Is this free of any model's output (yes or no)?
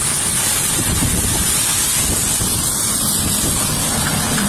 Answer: no